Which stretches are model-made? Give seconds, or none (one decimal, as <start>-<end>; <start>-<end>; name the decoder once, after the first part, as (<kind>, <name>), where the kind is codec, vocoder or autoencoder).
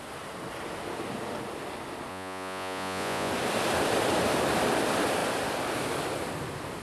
2.1-3.3 (vocoder, Vocos)